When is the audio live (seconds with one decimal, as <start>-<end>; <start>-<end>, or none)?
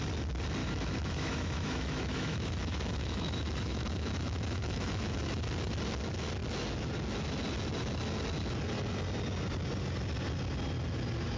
0.0-0.6; 5.4-11.4